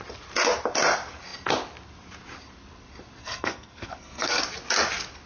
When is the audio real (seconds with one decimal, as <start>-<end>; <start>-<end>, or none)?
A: 0.0-3.2; 4.4-5.3